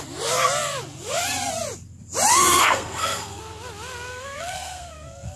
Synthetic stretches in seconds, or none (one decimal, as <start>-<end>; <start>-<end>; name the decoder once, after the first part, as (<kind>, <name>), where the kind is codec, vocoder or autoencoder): 2.3-3.4 (codec, SNAC); 4.1-5.4